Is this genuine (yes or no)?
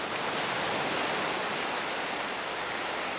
yes